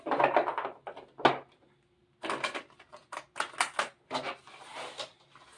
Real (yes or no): yes